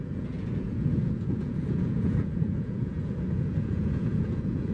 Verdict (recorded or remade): remade